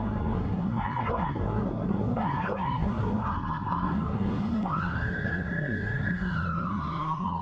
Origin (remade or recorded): remade